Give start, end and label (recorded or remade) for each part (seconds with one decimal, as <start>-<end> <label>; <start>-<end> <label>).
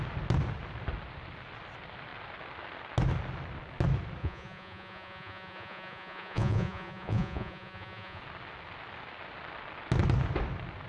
0.0-4.2 recorded; 4.2-8.2 remade; 8.2-10.9 recorded